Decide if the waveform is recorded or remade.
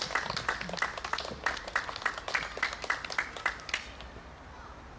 recorded